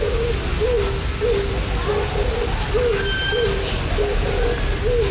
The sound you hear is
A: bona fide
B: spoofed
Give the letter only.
A